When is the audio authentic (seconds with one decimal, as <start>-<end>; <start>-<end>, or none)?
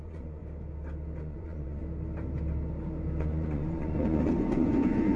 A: 0.4-1.2; 1.8-3.2